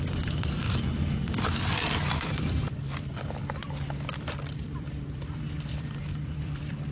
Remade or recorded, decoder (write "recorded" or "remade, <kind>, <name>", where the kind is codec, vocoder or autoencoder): remade, vocoder, BigVGAN v2